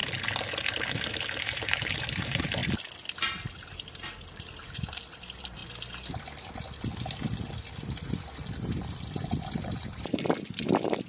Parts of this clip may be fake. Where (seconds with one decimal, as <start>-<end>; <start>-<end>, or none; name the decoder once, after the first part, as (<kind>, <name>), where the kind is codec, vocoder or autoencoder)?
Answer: 1.4-2.6 (vocoder, BigVGAN v2); 3.6-5.6; 9.6-11.1